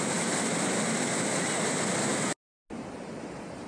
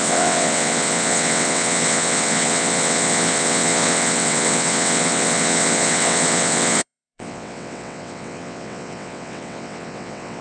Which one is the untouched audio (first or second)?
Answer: first